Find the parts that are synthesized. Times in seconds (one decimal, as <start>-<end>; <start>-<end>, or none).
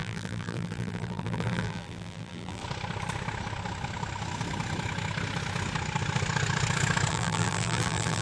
0.0-2.6; 7.1-8.2